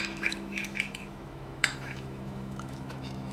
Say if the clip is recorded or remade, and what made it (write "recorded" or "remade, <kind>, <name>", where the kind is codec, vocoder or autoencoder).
remade, autoencoder, DAC-VAE